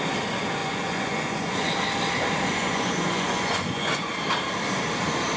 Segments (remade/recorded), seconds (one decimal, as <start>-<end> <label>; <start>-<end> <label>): 0.0-0.6 recorded; 0.6-1.7 remade; 1.7-2.5 recorded; 2.5-4.1 remade; 4.1-5.4 recorded